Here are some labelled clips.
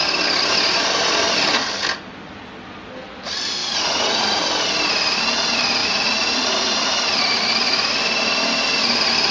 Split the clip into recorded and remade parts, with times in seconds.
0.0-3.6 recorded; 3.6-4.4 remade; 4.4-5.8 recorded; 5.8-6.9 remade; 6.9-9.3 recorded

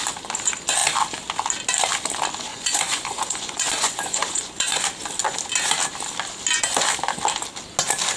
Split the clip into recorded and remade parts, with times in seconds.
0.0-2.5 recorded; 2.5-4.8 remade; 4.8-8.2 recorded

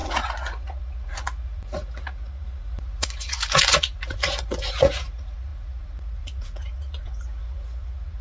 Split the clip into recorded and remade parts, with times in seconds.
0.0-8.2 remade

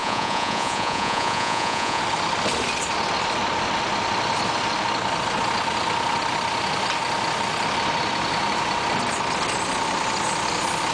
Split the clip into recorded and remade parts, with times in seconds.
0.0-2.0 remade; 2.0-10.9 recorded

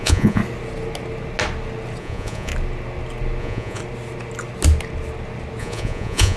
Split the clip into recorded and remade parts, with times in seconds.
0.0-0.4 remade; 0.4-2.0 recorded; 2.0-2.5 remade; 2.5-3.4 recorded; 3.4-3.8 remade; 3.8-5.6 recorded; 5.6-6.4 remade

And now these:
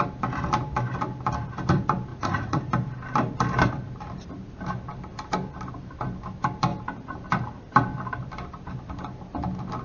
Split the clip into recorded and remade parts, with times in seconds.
0.0-2.1 recorded; 2.1-2.6 remade; 2.6-9.8 recorded